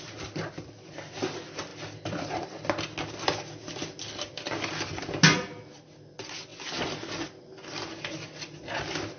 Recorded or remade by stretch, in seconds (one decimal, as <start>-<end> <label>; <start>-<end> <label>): 0.0-9.2 recorded